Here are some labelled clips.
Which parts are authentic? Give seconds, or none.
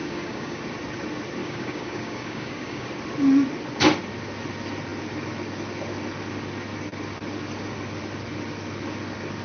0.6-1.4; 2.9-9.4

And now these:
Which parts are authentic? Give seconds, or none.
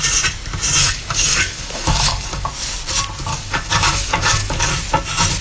0.0-0.8; 2.5-3.3; 4.7-5.4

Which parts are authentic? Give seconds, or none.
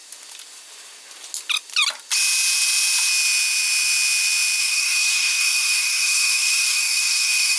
0.0-4.6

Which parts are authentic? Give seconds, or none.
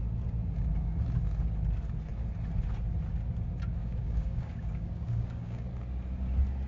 0.0-3.8; 5.7-6.7